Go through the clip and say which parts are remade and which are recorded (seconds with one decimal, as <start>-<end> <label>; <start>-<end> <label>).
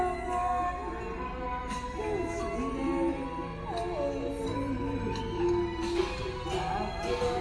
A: 0.0-7.4 recorded